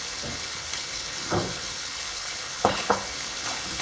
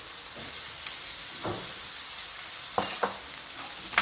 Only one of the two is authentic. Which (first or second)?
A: second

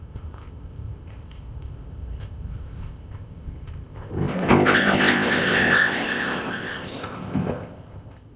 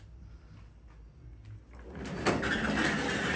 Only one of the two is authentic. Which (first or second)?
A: second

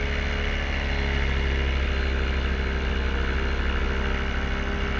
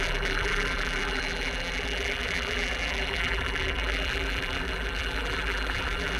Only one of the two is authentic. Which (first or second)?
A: first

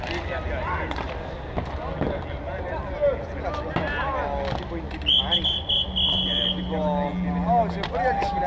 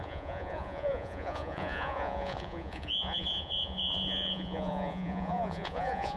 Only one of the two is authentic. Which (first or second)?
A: first